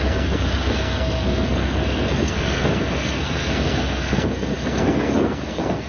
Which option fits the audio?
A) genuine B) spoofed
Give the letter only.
B